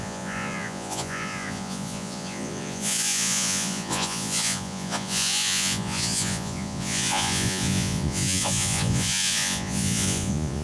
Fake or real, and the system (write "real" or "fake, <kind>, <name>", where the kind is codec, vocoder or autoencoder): fake, vocoder, Vocos